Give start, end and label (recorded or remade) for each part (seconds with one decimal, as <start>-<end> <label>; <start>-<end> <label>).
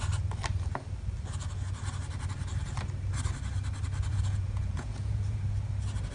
0.0-4.1 recorded; 4.1-5.4 remade; 5.4-6.1 recorded